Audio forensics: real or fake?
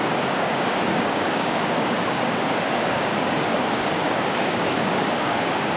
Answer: fake